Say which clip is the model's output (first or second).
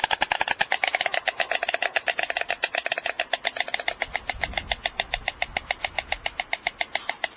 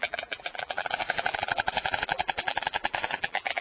second